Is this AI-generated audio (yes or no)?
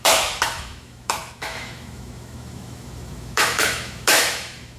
yes